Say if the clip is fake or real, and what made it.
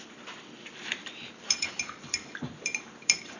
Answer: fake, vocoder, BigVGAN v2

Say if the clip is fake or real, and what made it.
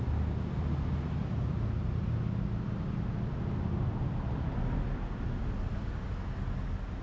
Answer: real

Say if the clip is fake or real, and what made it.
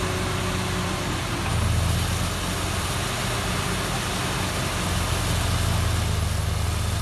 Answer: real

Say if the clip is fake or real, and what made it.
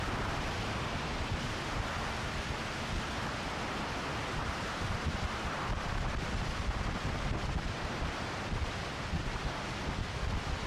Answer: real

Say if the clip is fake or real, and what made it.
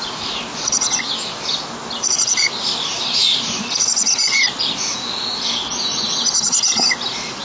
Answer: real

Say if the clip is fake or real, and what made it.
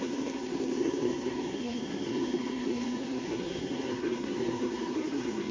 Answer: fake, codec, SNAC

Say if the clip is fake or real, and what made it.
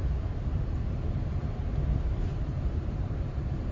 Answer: fake, vocoder, BigVGAN v2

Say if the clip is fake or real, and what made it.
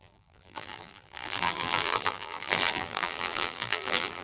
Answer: fake, vocoder, BigVGAN v2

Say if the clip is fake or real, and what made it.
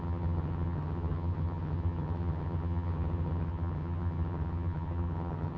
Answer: fake, vocoder, HiFi-GAN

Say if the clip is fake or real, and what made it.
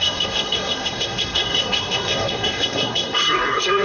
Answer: fake, codec, SNAC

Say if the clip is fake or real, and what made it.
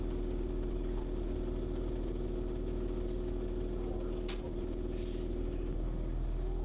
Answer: real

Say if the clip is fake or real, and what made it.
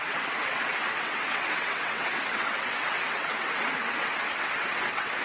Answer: fake, vocoder, WaveNeXt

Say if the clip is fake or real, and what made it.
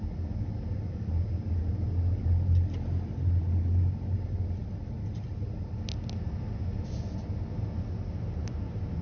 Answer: real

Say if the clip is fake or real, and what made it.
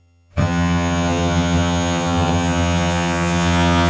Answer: fake, vocoder, HiFi-GAN